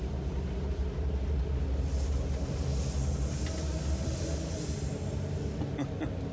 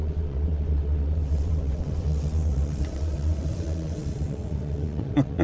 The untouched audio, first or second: first